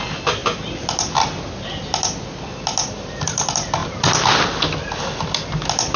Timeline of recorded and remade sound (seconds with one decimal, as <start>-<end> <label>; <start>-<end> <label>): 0.0-6.0 recorded